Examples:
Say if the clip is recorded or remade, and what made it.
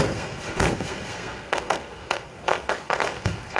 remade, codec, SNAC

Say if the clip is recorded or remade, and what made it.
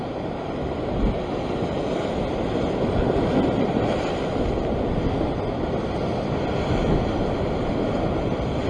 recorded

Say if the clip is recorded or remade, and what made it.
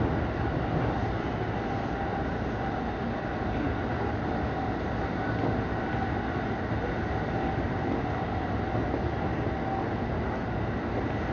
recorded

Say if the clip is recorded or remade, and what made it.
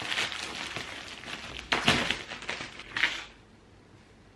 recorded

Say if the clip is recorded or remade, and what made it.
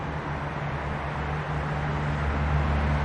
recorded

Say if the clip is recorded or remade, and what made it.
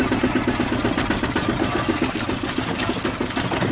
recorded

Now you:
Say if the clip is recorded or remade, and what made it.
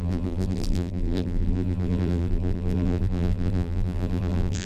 remade, vocoder, BigVGAN v2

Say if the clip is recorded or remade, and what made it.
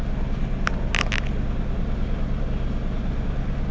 recorded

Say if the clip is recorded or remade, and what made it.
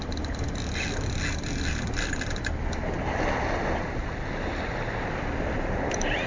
recorded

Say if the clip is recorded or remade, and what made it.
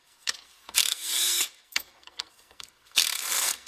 remade, codec, SNAC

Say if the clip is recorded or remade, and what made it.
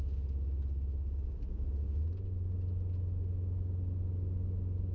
recorded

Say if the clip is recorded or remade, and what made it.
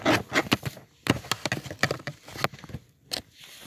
recorded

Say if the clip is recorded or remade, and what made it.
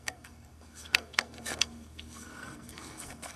remade, codec, SNAC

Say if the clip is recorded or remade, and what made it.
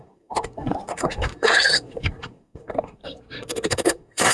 remade, codec, SNAC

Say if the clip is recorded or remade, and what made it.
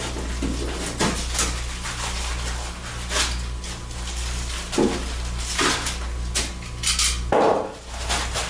recorded